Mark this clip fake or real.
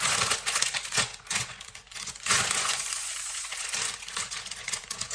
fake